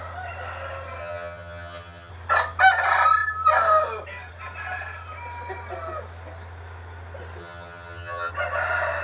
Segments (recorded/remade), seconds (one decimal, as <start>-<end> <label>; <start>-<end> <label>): 0.0-1.0 recorded; 1.0-2.1 remade; 2.1-7.4 recorded; 7.4-8.3 remade; 8.3-9.0 recorded